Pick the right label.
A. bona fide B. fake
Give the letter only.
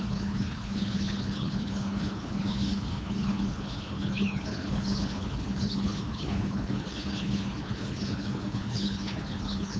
B